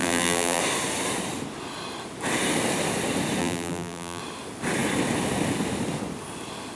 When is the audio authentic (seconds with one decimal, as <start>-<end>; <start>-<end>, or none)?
0.6-3.4; 4.2-6.8